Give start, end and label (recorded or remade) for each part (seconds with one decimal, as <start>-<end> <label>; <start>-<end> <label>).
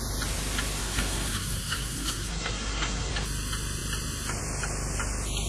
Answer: 0.0-0.8 recorded; 0.8-3.1 remade; 3.1-5.5 recorded